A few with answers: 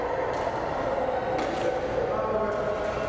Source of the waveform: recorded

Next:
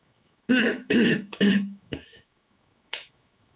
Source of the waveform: remade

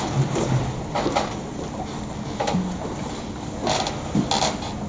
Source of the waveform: recorded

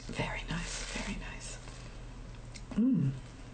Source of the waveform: recorded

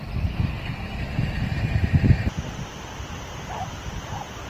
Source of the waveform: recorded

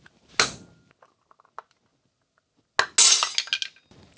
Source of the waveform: recorded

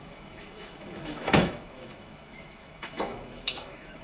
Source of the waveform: remade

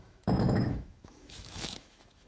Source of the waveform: remade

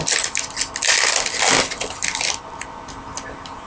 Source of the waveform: recorded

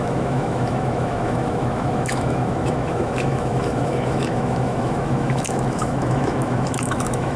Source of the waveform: remade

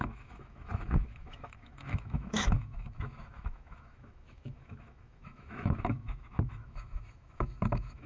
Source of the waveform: remade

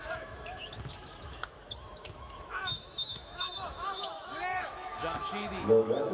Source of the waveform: remade